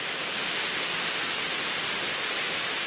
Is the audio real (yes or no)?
yes